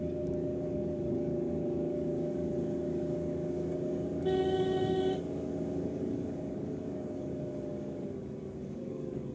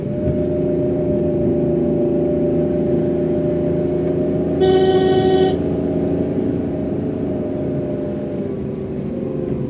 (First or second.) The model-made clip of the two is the first